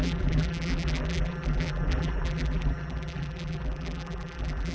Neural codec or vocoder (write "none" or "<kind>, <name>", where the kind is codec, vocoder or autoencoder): vocoder, BigVGAN v2